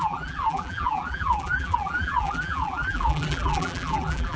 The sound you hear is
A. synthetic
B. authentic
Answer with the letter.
A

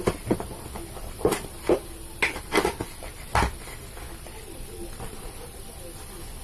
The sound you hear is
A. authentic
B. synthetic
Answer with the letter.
B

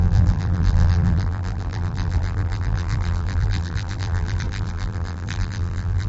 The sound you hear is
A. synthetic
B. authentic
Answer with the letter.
A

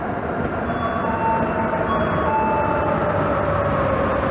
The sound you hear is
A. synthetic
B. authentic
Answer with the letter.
B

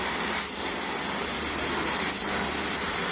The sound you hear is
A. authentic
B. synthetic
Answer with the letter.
A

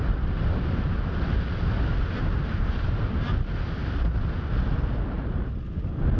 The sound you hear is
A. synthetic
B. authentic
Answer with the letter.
B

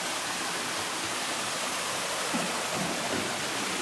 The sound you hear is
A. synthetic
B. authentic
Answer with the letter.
A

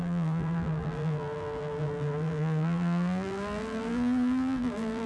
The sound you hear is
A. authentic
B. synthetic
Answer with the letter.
B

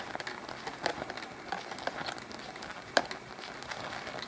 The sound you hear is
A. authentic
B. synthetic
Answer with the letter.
A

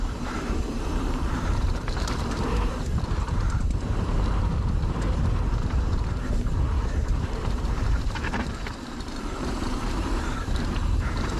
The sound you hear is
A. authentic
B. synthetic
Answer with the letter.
B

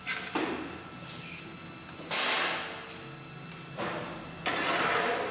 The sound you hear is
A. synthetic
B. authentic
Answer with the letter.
B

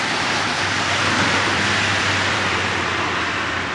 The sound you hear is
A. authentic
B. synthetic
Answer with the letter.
B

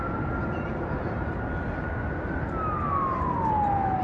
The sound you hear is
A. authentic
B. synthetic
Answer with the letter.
A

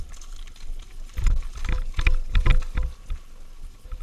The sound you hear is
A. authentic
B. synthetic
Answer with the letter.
A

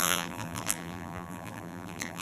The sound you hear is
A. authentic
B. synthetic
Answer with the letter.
B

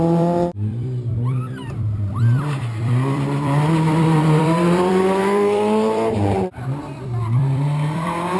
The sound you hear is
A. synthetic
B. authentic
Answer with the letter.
A